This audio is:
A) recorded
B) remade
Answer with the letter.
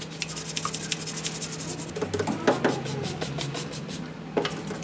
A